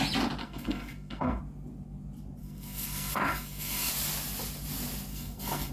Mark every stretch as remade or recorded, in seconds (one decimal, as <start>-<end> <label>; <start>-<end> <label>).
0.0-0.4 recorded; 0.4-1.4 remade; 1.4-2.4 recorded; 2.4-3.9 remade; 3.9-5.1 recorded; 5.1-5.7 remade